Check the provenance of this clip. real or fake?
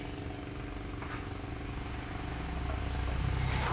real